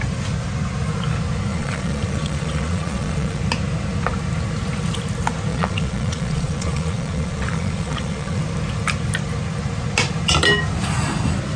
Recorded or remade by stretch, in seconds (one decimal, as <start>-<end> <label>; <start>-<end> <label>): 0.0-1.5 recorded; 1.5-3.4 remade; 3.4-5.5 recorded; 5.5-8.4 remade; 8.4-11.6 recorded